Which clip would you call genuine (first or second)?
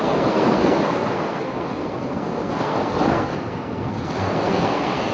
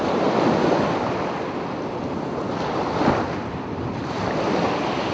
second